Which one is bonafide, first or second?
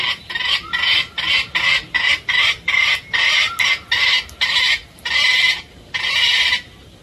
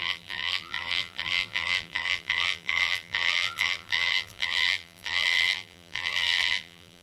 first